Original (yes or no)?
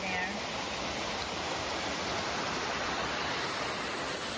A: yes